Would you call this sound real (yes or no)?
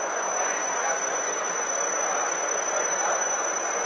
no